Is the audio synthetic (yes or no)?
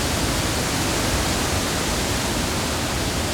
no